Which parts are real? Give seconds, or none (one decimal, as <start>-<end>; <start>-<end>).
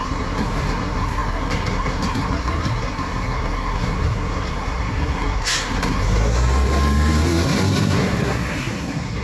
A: none